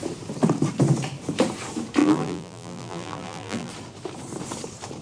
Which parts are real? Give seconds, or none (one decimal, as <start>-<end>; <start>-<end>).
0.0-2.0; 3.7-5.0